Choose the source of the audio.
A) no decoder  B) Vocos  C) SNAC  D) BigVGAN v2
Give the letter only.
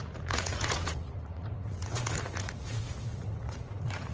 B